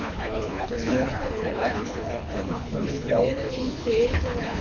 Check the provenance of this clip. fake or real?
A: fake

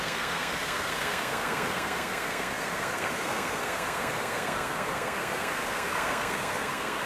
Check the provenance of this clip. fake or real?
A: fake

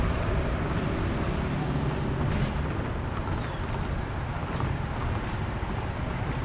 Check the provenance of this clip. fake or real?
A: real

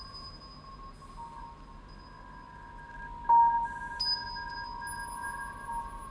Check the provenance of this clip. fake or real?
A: real